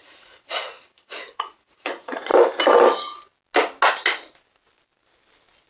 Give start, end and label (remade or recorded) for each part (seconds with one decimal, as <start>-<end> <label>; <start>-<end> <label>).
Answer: 0.0-2.3 remade; 2.3-5.7 recorded